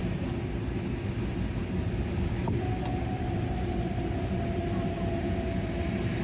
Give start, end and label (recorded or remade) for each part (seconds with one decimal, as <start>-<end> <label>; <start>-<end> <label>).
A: 0.0-6.2 recorded